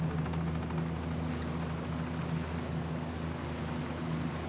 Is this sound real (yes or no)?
yes